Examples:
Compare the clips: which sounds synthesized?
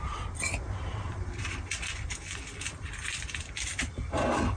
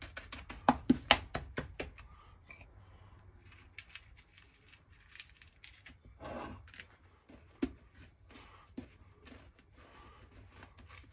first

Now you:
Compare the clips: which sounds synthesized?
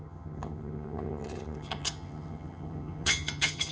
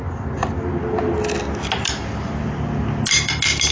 first